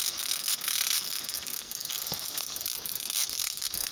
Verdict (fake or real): fake